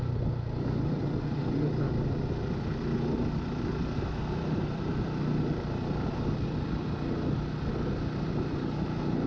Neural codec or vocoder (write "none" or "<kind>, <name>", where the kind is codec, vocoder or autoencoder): vocoder, BigVGAN v2